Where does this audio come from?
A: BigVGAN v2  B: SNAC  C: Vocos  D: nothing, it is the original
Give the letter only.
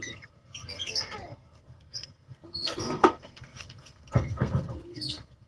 B